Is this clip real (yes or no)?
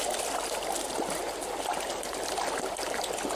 yes